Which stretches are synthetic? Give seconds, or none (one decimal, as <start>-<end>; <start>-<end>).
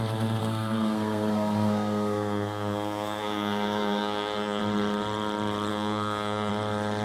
0.4-4.6; 5.7-6.5